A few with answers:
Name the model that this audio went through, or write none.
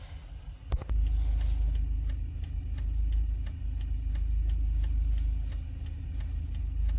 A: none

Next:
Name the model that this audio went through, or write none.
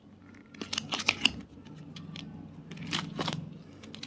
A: none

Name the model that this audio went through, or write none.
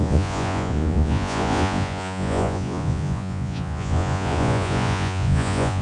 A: vocoder, Vocos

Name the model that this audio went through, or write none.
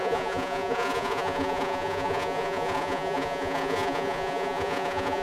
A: vocoder, Vocos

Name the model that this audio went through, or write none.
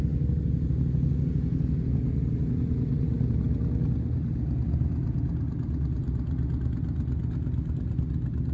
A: none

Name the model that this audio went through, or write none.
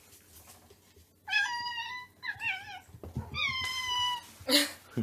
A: none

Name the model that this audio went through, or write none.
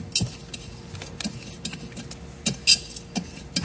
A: none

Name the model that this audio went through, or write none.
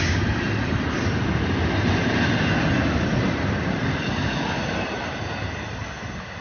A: none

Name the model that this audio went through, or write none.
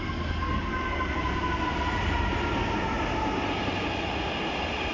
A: none